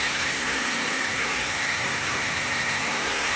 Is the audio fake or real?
fake